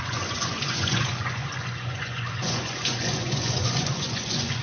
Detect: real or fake fake